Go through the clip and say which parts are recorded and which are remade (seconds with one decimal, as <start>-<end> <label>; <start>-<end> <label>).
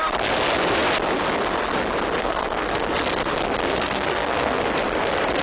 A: 0.0-2.2 recorded; 2.2-2.9 remade; 2.9-3.6 recorded; 3.6-4.6 remade; 4.6-5.4 recorded